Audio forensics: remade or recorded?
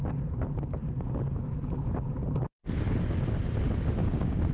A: recorded